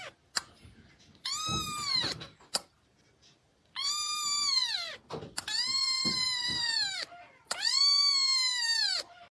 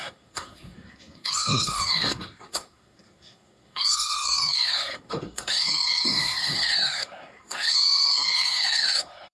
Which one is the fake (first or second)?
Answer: second